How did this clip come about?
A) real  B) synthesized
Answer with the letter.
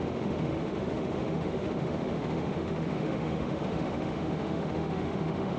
B